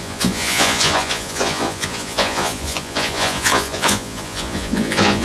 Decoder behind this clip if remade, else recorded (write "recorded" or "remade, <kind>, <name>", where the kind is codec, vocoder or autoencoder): remade, vocoder, Vocos